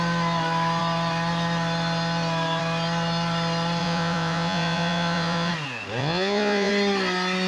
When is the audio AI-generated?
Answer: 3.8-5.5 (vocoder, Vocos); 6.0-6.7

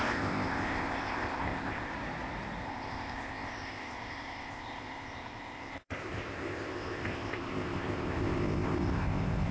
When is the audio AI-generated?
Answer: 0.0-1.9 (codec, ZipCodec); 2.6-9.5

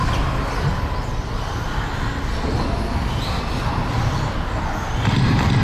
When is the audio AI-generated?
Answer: none

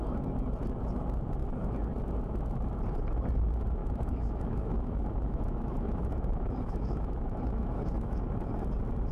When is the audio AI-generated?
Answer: 3.8-8.2 (autoencoder, DAC-VAE)